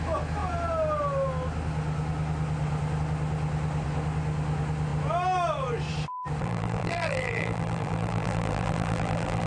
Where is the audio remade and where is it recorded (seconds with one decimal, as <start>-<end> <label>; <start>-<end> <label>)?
0.0-6.4 recorded; 6.4-9.5 remade